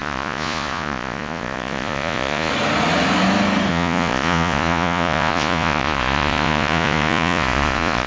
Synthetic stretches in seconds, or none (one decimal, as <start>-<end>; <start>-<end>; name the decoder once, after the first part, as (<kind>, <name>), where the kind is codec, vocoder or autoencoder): 0.0-2.5 (vocoder, Vocos); 3.7-8.1